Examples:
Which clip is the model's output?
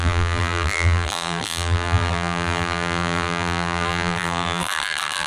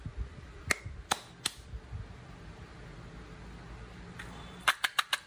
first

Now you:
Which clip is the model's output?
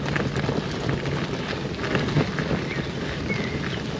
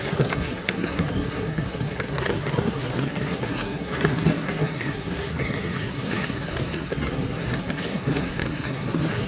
second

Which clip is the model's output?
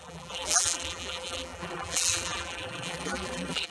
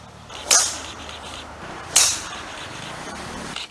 first